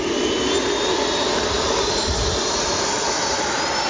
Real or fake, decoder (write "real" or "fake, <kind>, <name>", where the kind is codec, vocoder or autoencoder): real